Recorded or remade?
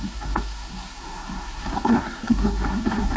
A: remade